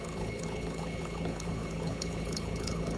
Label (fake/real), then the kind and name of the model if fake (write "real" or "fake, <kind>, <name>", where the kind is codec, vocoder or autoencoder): fake, codec, HILCodec